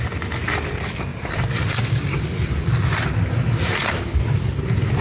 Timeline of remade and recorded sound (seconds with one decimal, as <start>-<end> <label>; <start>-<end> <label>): 0.0-5.0 recorded